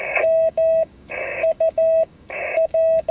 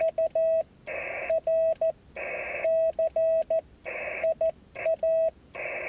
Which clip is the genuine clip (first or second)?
second